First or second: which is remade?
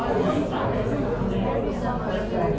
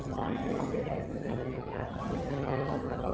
second